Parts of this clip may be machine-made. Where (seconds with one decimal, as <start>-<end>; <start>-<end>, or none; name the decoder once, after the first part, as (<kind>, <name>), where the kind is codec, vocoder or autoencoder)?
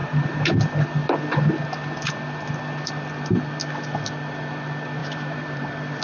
0.0-0.5 (vocoder, BigVGAN v2); 5.0-6.0